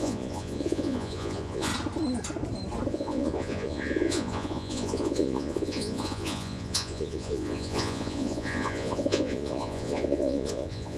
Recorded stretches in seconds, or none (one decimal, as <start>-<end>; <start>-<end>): 1.7-2.9